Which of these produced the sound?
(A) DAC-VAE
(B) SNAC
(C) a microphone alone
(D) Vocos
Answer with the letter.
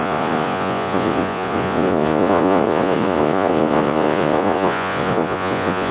D